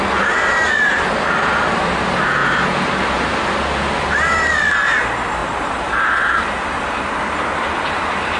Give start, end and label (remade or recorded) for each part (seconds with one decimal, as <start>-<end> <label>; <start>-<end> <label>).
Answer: 0.0-2.4 recorded; 2.4-3.5 remade; 3.5-5.4 recorded; 5.4-7.3 remade; 7.3-8.4 recorded